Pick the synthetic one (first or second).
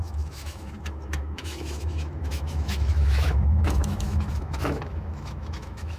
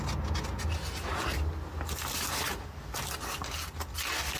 first